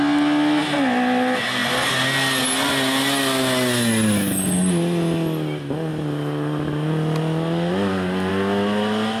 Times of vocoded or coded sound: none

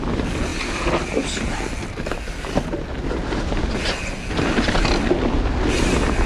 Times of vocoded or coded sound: none

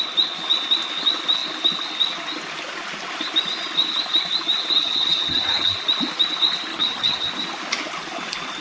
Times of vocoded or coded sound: 4.8-5.7 (vocoder, HiFi-GAN); 6.7-7.3

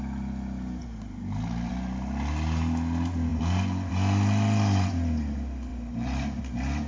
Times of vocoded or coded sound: 0.8-1.7 (vocoder, BigVGAN v2); 5.7-6.4